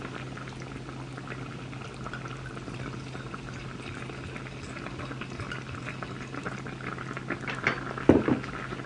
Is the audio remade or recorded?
recorded